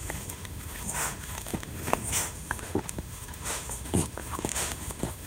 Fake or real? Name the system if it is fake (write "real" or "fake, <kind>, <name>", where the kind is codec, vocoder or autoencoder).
fake, autoencoder, DAC-VAE